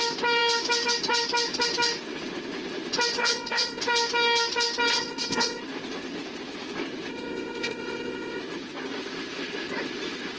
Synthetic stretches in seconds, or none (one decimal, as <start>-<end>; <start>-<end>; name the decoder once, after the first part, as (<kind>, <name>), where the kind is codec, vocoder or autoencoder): 3.2-3.8 (codec, ZipCodec); 4.9-5.6; 7.1-8.4